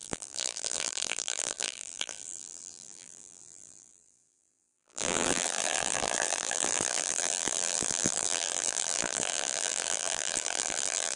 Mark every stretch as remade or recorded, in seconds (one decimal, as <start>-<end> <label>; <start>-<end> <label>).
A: 0.0-11.2 remade